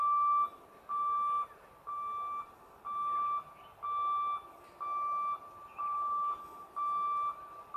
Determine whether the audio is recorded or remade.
recorded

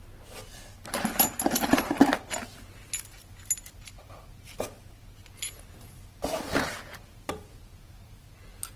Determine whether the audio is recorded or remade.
recorded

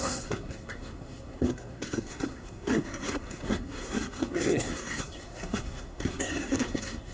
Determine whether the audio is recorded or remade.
remade